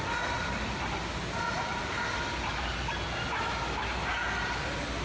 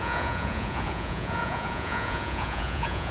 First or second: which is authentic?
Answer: first